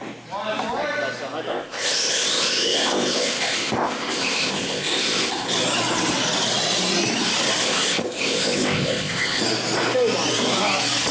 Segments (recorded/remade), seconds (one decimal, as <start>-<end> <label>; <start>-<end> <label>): 0.0-1.5 recorded; 1.5-5.5 remade; 5.5-7.6 recorded; 7.6-9.4 remade; 9.4-11.1 recorded